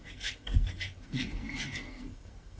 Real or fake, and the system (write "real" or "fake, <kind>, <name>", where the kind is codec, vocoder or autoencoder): fake, codec, SNAC